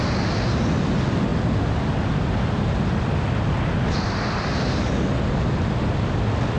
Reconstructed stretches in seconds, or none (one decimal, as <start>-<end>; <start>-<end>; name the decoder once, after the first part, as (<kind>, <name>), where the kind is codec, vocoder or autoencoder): none